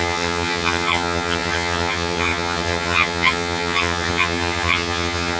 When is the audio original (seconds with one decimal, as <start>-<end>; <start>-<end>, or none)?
none